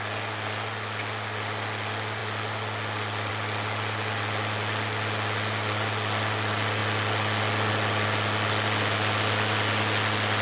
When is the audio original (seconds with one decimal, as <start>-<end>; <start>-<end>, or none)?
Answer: 0.0-10.4